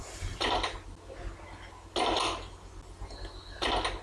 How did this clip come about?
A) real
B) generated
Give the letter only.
A